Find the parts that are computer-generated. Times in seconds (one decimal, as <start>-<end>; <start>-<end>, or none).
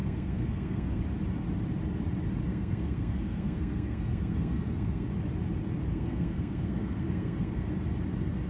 0.0-1.0; 2.5-5.1; 5.9-7.7